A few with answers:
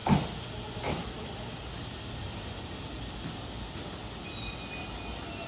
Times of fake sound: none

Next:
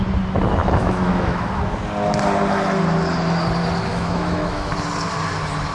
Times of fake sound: 0.6-1.6 (autoencoder, DAC-VAE); 3.9-4.7

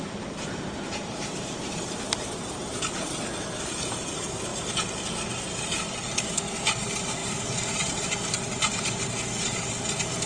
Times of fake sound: 0.0-4.5 (vocoder, BigVGAN v2); 6.2-10.3

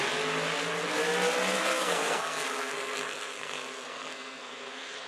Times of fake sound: 1.6-5.1 (codec, SNAC)

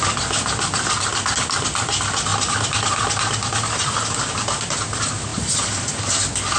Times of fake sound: none

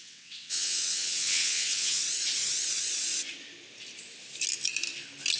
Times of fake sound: 0.0-2.0 (vocoder, WaveNeXt)

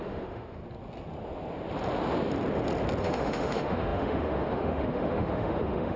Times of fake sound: 0.0-0.6 (autoencoder, DAC-VAE); 3.0-6.0

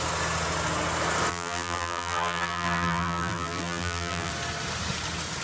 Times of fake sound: 1.3-4.3 (vocoder, BigVGAN v2)